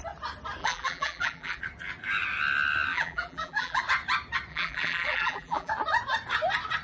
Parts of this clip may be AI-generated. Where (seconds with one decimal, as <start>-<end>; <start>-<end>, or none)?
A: 0.6-1.6; 2.9-3.8; 4.5-5.7